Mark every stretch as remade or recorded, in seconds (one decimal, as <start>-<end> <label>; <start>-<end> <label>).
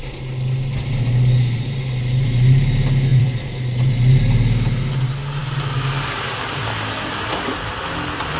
0.0-3.1 recorded; 3.1-3.8 remade; 3.8-8.4 recorded